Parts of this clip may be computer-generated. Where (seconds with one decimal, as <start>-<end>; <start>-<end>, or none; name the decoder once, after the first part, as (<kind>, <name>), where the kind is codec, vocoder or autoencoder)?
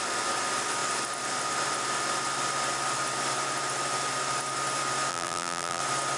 5.1-5.8 (vocoder, BigVGAN v2)